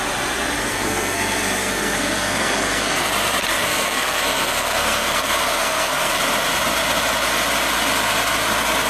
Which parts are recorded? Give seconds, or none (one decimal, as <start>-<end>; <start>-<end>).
0.0-0.6; 3.1-3.5; 6.2-8.9